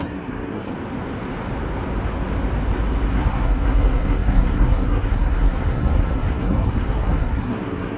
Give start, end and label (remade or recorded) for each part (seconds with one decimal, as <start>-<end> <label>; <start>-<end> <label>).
0.0-0.7 remade; 0.7-3.1 recorded; 3.1-8.0 remade